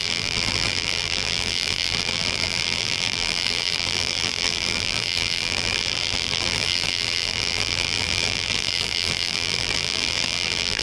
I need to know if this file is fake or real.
fake